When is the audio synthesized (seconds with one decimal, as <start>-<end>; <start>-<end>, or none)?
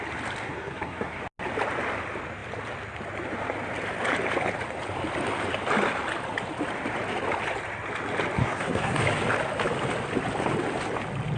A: 0.4-1.2; 8.4-9.0